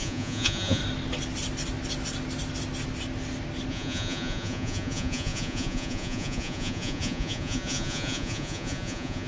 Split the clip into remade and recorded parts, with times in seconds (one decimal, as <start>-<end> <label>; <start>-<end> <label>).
0.0-0.8 remade; 0.8-3.7 recorded; 3.7-9.3 remade